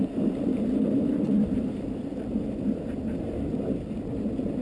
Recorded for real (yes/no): no